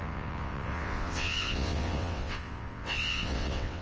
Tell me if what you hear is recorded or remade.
remade